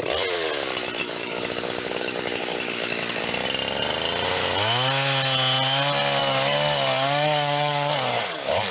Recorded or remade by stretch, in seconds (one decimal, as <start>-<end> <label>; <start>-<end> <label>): 0.0-1.0 recorded; 1.0-3.2 remade; 3.2-6.2 recorded; 6.2-8.7 remade